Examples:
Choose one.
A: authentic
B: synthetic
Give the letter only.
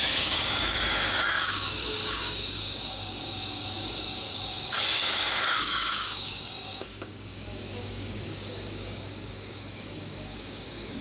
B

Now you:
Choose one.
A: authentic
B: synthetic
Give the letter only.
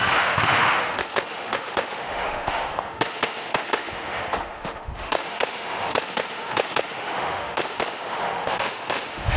B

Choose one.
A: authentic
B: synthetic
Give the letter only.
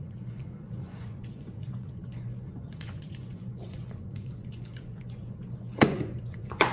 B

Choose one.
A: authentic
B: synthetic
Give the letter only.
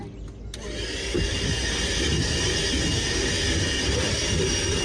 A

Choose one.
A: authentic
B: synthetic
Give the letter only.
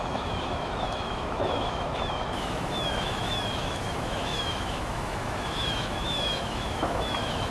B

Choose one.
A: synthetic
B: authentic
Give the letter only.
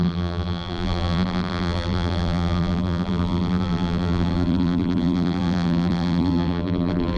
A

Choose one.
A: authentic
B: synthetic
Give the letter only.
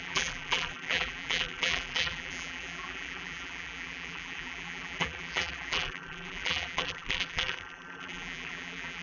B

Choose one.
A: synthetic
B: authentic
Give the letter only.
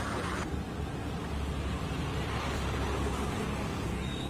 B